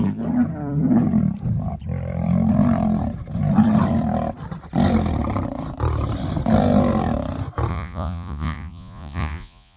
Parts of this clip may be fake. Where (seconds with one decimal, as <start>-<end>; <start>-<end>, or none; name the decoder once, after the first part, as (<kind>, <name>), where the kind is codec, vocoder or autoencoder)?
7.7-9.8 (vocoder, Vocos)